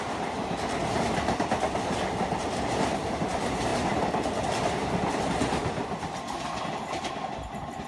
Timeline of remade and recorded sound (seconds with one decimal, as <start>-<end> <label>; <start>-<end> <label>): 0.0-7.9 recorded